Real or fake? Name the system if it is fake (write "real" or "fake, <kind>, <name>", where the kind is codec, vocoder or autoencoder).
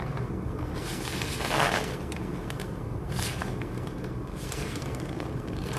fake, codec, SNAC